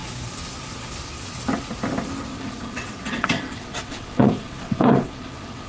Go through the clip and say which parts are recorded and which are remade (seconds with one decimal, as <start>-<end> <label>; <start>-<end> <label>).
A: 0.0-2.3 recorded; 2.3-5.7 remade